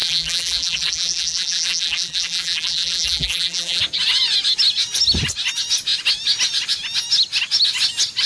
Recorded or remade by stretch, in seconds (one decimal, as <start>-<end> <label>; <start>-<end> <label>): 0.0-3.8 remade; 3.8-8.3 recorded